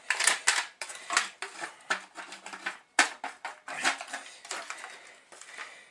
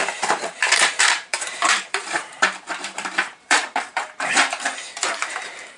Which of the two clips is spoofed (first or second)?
second